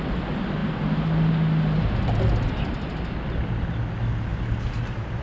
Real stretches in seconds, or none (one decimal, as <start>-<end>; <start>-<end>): 0.0-5.2